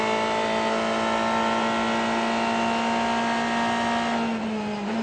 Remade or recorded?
recorded